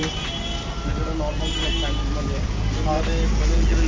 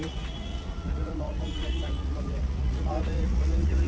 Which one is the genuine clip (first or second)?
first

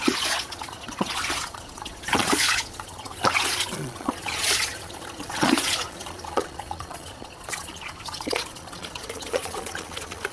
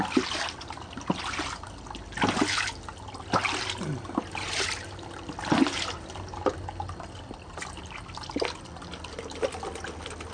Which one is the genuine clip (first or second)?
second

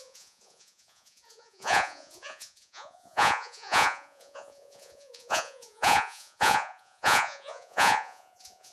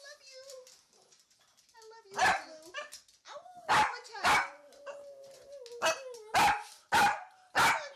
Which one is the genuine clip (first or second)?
second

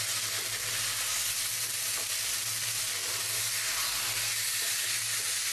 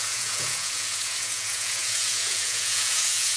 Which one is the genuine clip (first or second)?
first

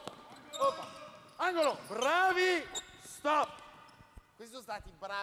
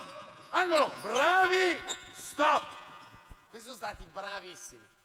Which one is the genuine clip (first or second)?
first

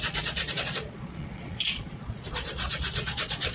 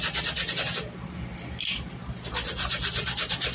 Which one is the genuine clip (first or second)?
second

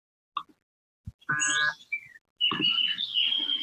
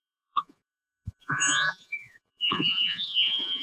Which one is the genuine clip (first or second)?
first